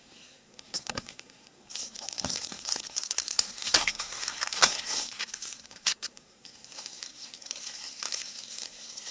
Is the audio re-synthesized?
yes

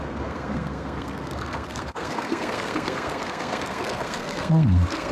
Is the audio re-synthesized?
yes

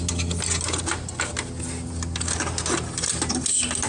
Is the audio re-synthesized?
no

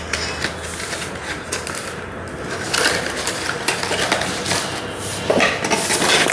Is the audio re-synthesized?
no